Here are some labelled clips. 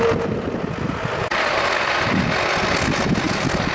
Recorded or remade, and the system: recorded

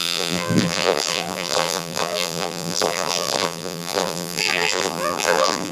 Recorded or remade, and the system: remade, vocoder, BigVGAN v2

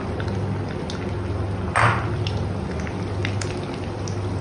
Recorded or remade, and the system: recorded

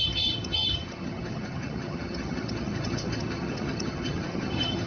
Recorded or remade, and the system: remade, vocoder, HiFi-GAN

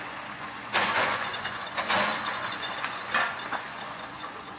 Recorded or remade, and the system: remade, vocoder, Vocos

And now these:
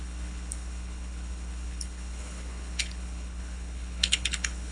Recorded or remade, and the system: remade, codec, HILCodec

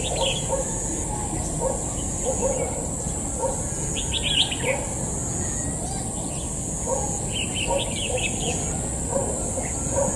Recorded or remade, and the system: recorded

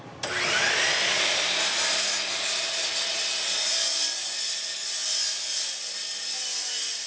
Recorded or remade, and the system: recorded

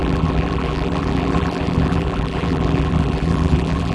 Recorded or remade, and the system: remade, vocoder, BigVGAN v2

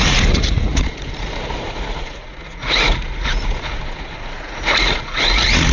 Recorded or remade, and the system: remade, vocoder, Vocos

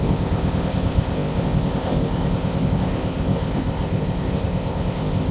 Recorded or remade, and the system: remade, codec, ZipCodec